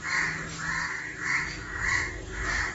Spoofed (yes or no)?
no